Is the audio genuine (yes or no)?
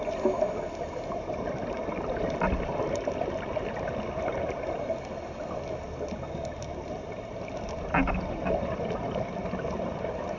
yes